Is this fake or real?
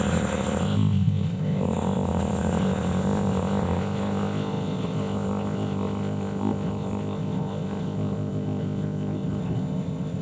fake